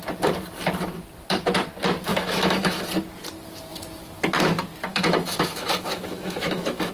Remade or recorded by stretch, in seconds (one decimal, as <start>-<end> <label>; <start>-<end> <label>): 0.0-2.1 recorded; 2.1-2.8 remade; 2.8-4.9 recorded; 4.9-6.9 remade